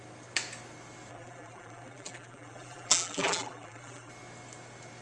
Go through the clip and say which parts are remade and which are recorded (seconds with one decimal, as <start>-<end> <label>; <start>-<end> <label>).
0.0-1.1 recorded; 1.1-4.1 remade; 4.1-5.0 recorded